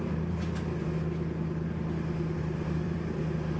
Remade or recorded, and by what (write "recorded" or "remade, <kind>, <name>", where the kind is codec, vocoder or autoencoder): remade, vocoder, BigVGAN v2